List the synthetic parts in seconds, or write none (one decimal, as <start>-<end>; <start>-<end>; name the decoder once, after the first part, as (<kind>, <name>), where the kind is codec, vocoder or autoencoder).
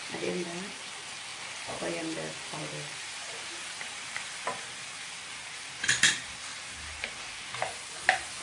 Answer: 3.2-5.1 (vocoder, BigVGAN v2); 6.5-7.1